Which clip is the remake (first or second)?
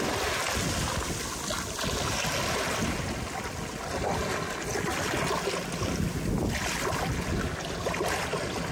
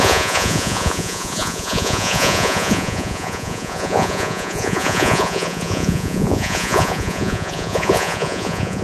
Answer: second